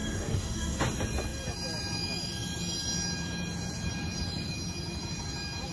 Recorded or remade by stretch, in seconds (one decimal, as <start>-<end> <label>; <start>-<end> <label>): 0.0-0.8 remade; 0.8-5.7 recorded

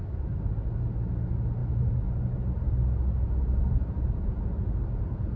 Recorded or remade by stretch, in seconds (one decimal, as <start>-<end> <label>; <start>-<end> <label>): 0.0-5.4 recorded

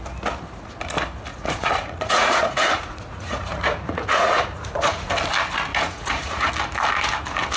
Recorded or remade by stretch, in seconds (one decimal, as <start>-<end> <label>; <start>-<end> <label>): 0.0-1.3 recorded; 1.3-5.1 remade; 5.1-5.7 recorded; 5.7-6.5 remade; 6.5-7.6 recorded